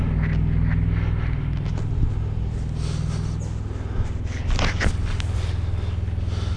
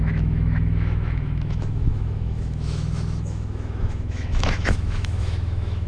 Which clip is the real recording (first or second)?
first